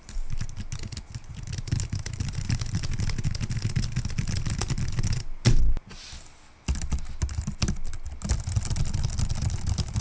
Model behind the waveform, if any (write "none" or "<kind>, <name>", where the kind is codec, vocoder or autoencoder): none